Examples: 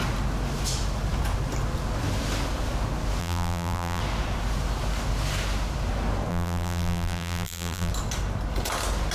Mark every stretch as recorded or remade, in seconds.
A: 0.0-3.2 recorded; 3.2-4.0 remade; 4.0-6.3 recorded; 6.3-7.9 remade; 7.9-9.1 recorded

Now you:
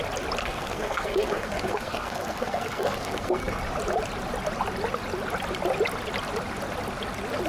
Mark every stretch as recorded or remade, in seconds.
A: 0.0-0.4 recorded; 0.4-3.6 remade; 3.6-7.5 recorded